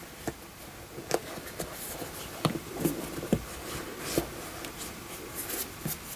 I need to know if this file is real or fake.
real